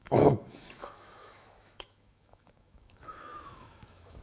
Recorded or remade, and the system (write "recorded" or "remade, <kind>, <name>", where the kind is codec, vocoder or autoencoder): remade, autoencoder, DAC-VAE